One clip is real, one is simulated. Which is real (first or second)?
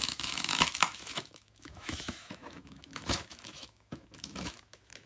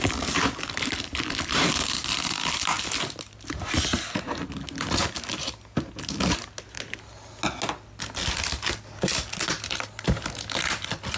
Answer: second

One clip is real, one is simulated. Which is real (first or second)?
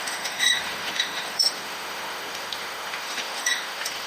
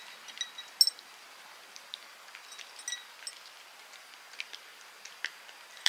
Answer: second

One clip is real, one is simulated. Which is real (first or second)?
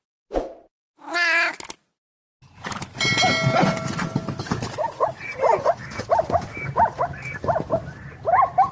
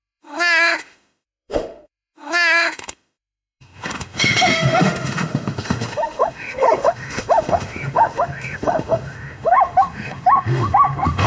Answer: first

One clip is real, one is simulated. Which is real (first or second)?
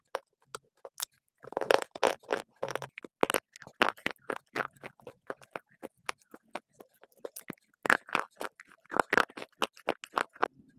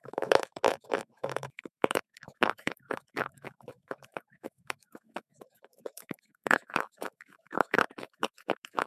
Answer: first